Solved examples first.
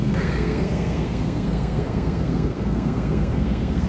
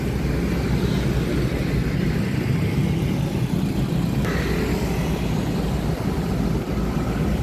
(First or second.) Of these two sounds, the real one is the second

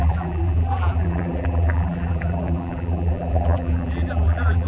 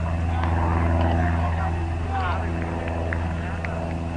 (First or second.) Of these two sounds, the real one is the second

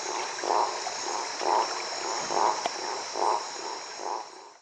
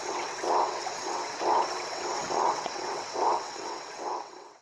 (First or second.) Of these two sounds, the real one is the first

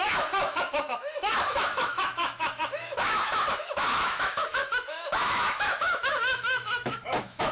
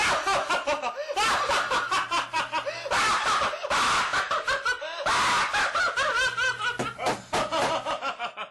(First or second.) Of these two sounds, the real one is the second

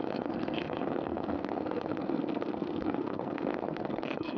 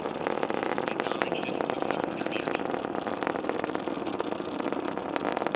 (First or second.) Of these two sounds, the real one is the second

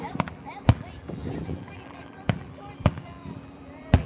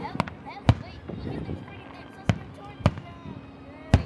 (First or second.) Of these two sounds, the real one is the second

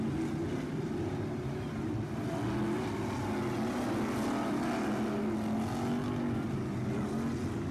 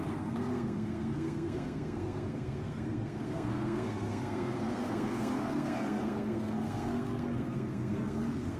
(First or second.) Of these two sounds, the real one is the first